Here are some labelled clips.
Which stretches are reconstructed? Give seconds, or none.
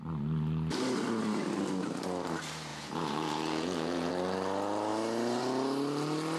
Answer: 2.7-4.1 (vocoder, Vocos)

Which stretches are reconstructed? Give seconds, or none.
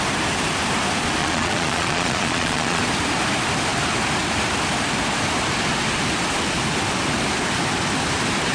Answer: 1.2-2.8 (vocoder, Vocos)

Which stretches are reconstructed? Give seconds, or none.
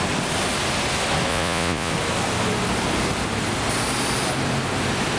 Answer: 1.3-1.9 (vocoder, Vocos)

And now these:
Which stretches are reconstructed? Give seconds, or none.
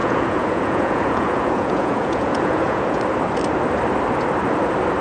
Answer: 0.0-3.0 (vocoder, Vocos)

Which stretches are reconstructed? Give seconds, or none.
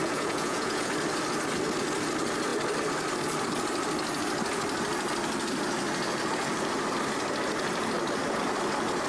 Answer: 0.0-0.9 (vocoder, Vocos)